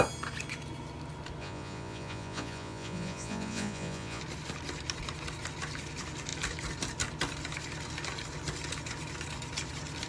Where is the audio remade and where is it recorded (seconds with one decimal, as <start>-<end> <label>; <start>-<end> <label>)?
0.0-1.4 recorded; 1.4-4.2 remade; 4.2-10.1 recorded